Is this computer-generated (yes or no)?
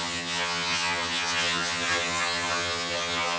yes